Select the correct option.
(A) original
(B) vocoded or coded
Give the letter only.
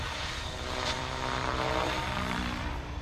B